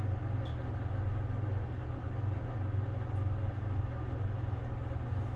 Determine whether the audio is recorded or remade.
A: recorded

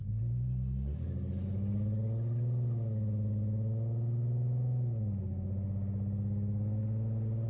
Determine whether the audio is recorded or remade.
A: recorded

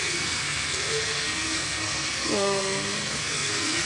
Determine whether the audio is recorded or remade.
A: remade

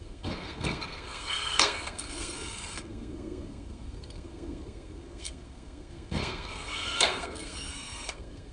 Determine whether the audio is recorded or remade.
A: remade